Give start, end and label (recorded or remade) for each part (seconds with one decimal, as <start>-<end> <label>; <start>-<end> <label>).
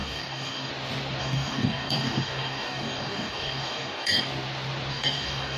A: 0.0-0.7 remade; 0.7-1.2 recorded; 1.2-4.2 remade; 4.2-4.9 recorded; 4.9-5.6 remade